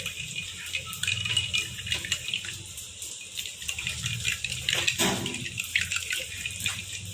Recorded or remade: recorded